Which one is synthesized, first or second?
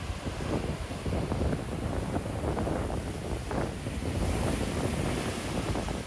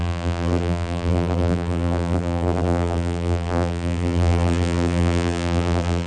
second